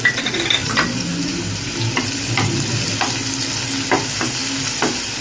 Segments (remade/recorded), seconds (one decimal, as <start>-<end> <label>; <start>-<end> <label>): 0.0-5.2 recorded